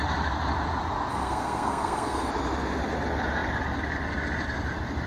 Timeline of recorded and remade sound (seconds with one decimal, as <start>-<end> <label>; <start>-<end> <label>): 0.0-1.1 recorded; 1.1-2.3 remade; 2.3-5.1 recorded